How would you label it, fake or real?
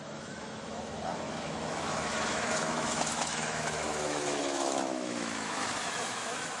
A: fake